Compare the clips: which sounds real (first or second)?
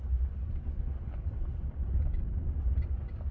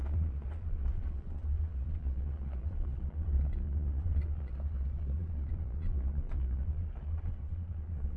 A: first